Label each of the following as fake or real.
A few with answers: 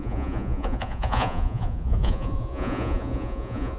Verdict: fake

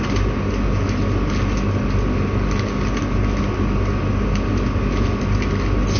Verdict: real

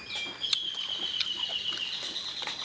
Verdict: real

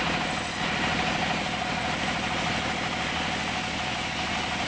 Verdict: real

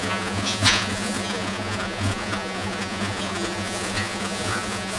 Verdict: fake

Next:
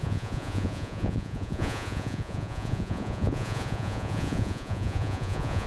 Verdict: fake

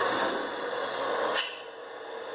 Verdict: real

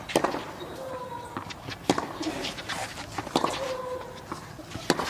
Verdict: real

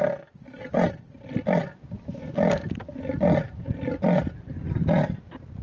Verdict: real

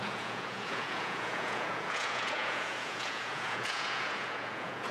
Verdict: fake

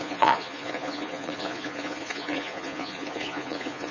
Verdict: fake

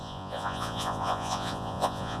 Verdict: fake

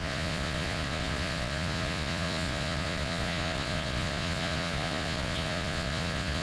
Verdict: fake